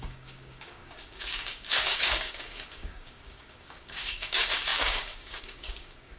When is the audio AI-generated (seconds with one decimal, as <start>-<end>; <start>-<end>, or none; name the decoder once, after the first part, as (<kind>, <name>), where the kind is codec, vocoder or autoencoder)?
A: 0.0-6.2 (codec, DAC)